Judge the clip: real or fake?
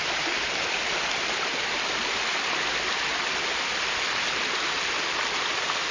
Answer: real